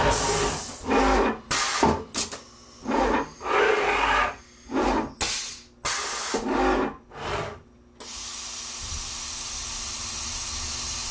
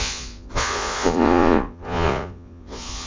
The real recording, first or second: first